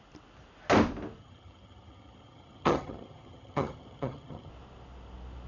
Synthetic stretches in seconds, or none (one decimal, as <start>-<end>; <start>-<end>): 1.2-4.5